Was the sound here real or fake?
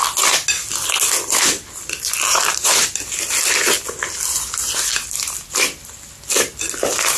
real